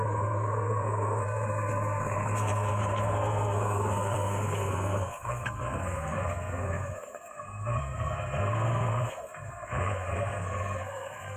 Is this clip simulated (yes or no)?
yes